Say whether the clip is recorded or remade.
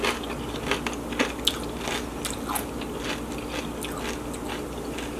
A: recorded